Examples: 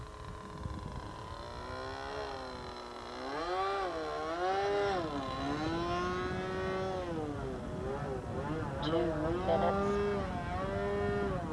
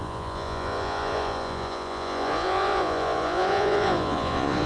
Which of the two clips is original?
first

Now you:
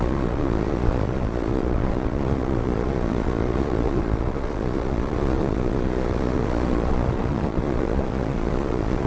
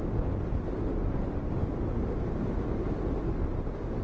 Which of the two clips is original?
second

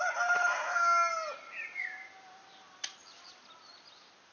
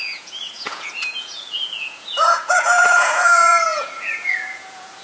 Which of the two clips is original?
first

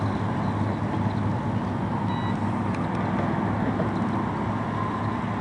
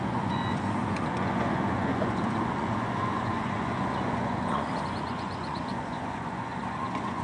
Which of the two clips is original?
first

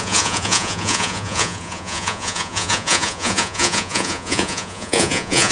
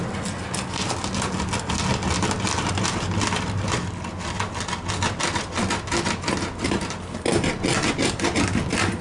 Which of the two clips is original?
second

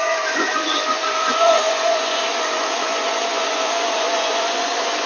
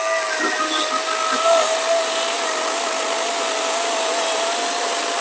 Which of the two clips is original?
second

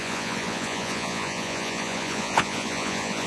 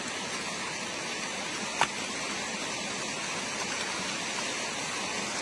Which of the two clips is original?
second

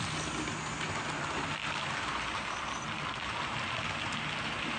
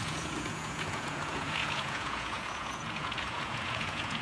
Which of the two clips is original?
first